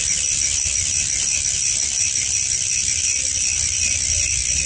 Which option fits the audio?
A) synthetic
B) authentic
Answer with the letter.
B